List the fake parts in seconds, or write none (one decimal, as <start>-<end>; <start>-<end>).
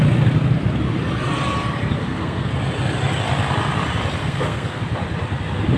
2.0-2.5; 4.2-4.8